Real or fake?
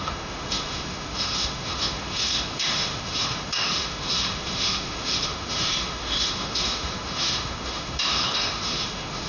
fake